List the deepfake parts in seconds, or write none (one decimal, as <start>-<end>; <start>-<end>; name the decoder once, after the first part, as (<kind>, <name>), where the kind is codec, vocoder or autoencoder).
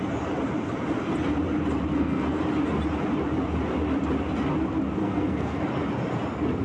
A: 1.9-2.4 (codec, SNAC); 5.0-5.6